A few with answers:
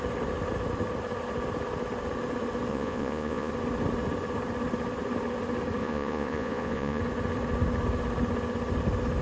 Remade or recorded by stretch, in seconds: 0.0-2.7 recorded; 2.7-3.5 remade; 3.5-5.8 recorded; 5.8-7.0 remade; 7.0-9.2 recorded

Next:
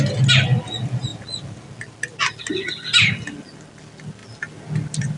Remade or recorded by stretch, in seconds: 0.0-5.2 recorded

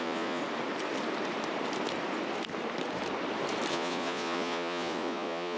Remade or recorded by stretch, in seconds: 0.0-0.4 remade; 0.4-3.7 recorded; 3.7-5.6 remade

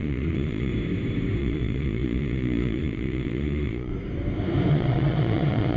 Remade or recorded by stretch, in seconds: 0.0-0.7 remade; 0.7-1.4 recorded; 1.4-3.9 remade; 3.9-4.7 recorded; 4.7-5.8 remade

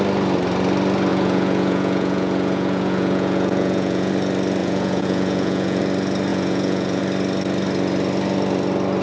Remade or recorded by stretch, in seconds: 0.0-1.1 recorded; 1.1-4.1 remade; 4.1-4.6 recorded; 4.6-5.8 remade; 5.8-6.3 recorded; 6.3-7.0 remade; 7.0-9.0 recorded